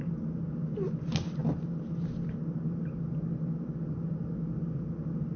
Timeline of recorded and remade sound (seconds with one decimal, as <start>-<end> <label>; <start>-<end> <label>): 0.0-5.4 recorded